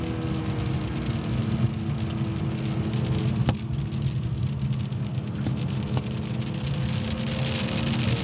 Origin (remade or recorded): recorded